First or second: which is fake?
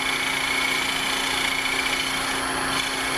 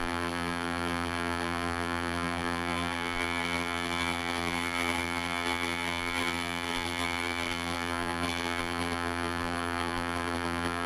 second